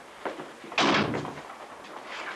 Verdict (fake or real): real